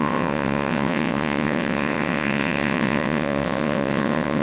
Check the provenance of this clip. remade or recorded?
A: remade